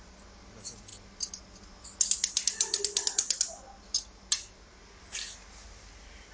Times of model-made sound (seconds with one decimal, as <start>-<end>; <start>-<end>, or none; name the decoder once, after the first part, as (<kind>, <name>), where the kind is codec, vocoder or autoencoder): none